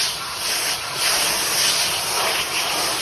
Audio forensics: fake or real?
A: real